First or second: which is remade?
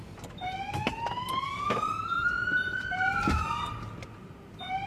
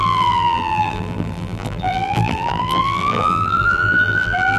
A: second